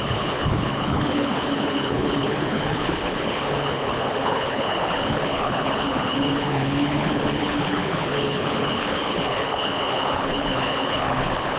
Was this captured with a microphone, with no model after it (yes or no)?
no